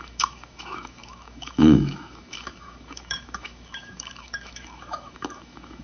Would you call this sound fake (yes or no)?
yes